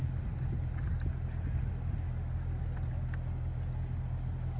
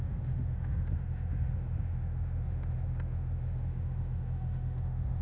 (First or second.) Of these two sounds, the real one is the first